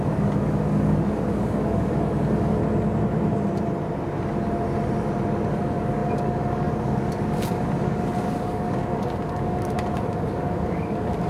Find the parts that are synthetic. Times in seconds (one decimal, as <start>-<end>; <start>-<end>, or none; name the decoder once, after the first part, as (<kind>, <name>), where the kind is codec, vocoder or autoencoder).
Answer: 0.0-2.6 (codec, DAC); 5.5-11.3